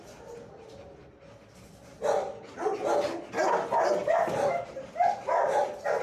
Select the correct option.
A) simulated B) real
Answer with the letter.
B